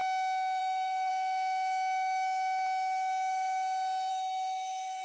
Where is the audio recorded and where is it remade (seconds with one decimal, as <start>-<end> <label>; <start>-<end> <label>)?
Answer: 0.0-0.6 recorded; 0.6-1.1 remade; 1.1-4.1 recorded; 4.1-5.0 remade